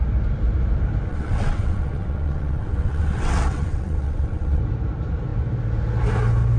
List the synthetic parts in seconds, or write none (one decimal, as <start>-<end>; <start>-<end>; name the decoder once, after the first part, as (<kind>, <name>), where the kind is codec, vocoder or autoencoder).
1.1-4.6 (vocoder, WaveNeXt)